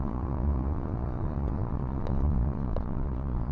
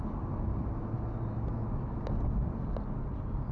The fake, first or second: first